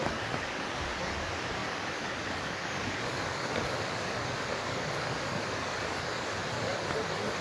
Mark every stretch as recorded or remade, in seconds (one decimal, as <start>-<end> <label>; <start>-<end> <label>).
0.0-7.4 remade